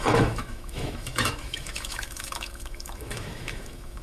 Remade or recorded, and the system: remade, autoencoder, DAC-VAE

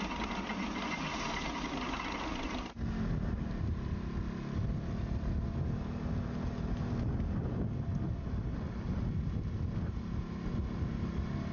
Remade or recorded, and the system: recorded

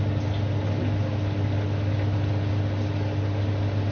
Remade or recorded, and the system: recorded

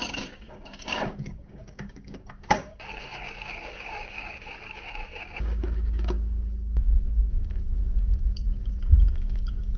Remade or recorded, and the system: remade, codec, DAC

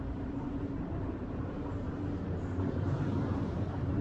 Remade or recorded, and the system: remade, vocoder, BigVGAN v2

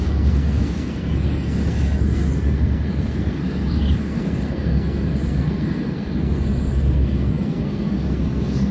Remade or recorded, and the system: remade, codec, SNAC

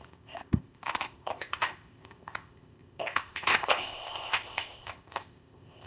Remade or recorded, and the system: remade, codec, ZipCodec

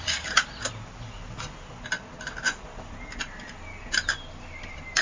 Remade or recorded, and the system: recorded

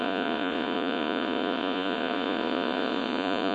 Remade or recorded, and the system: remade, vocoder, Vocos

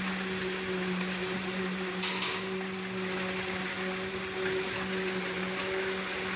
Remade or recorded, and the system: recorded